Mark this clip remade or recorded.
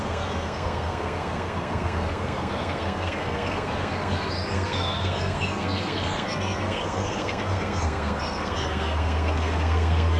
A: remade